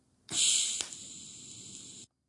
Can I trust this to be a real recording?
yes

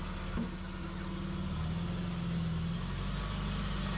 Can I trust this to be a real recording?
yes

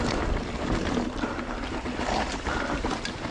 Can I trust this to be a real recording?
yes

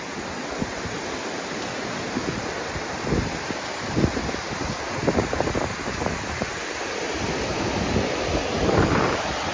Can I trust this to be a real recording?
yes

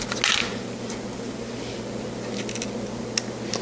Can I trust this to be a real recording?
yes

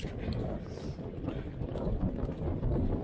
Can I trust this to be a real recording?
yes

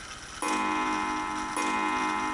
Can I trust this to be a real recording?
yes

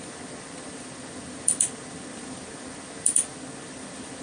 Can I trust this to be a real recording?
yes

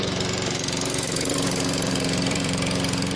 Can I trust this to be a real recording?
no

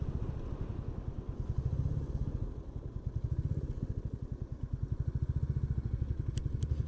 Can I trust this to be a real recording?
yes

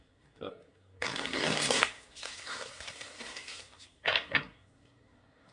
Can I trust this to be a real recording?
no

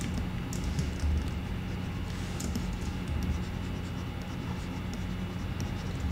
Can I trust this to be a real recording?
yes